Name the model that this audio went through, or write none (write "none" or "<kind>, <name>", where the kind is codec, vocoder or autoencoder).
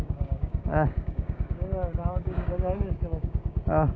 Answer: codec, DAC